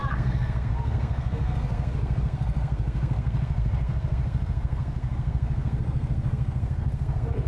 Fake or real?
fake